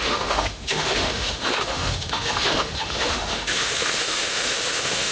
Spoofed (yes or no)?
yes